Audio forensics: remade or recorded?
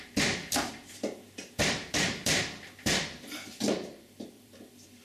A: remade